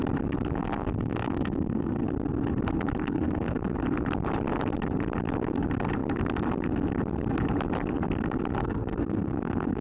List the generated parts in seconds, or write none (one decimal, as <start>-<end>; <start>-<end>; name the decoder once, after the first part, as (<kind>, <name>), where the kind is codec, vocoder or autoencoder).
0.6-2.0 (codec, SNAC); 3.0-3.7; 8.6-9.8